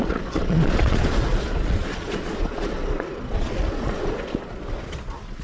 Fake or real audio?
fake